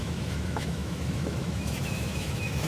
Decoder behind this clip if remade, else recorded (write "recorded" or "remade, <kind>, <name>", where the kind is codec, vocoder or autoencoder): remade, autoencoder, DAC-VAE